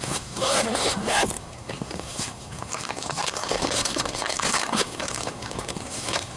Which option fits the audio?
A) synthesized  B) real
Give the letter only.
A